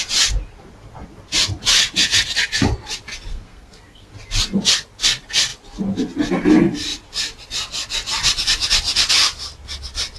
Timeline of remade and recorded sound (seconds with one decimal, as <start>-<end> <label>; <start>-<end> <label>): 0.0-3.3 recorded; 3.3-4.1 remade; 4.1-10.2 recorded